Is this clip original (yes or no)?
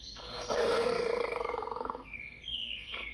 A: no